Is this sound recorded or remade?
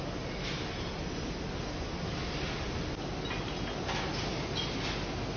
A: recorded